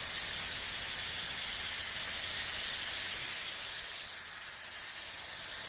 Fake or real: real